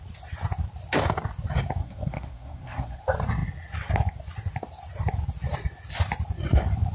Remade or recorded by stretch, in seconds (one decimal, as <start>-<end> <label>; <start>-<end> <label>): 0.0-1.8 recorded; 1.8-3.0 remade; 3.0-6.9 recorded

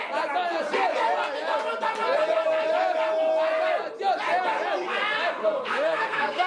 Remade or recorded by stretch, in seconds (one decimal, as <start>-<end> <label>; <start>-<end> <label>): 0.0-5.4 recorded; 5.4-6.5 remade

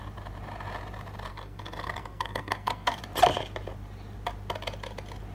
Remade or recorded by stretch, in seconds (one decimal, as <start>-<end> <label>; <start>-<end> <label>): 0.0-1.3 recorded; 1.3-3.0 remade; 3.0-5.3 recorded

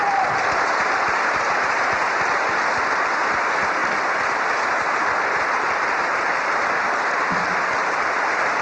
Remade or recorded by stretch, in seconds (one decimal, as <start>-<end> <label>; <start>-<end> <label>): 0.0-8.6 recorded

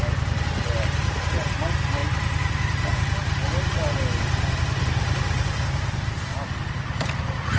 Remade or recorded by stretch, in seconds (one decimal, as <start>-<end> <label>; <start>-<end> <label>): 0.0-7.6 recorded

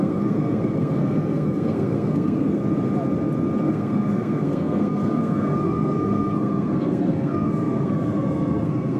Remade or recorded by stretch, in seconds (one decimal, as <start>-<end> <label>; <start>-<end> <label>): 0.0-2.6 remade; 2.6-3.7 recorded; 3.7-9.0 remade